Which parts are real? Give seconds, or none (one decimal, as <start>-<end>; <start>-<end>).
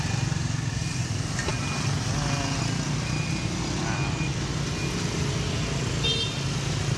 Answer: 0.0-7.0